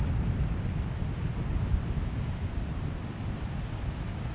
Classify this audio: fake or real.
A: real